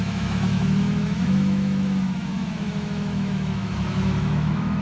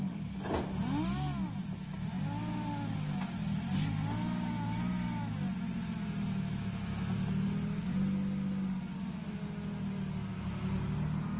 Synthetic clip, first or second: first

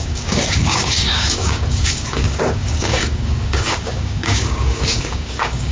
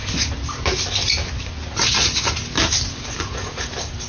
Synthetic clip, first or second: first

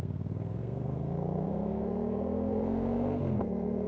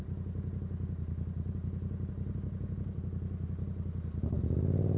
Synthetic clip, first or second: first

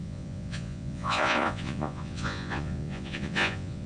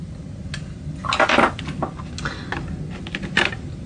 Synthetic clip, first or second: first